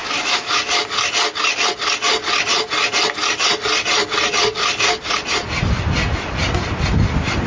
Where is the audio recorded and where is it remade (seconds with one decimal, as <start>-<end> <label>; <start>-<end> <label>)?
0.0-0.6 remade; 0.6-7.5 recorded